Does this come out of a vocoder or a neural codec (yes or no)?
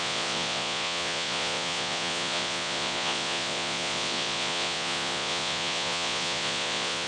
yes